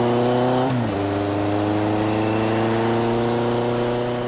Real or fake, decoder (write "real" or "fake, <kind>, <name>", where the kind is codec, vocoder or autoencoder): real